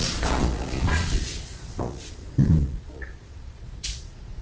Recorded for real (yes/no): no